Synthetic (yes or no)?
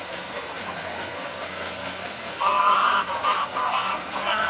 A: yes